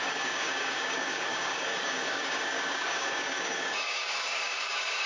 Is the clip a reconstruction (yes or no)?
yes